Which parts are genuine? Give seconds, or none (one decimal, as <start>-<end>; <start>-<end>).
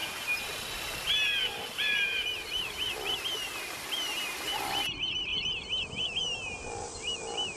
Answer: 0.0-1.4; 5.3-6.2; 6.9-7.6